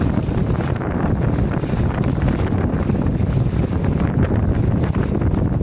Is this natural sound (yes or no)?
yes